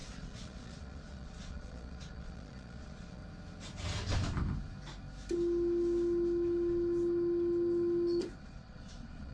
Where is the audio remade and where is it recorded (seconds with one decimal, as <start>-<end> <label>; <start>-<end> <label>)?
0.0-3.2 remade; 3.2-8.4 recorded; 8.4-9.3 remade